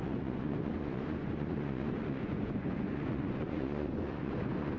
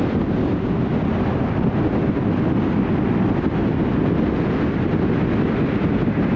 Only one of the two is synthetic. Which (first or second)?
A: first